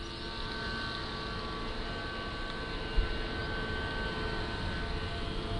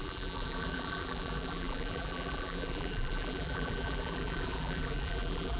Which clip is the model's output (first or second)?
second